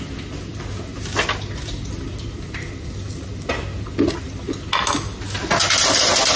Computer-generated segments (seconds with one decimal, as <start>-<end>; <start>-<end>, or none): none